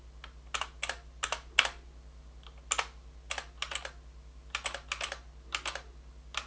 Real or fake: real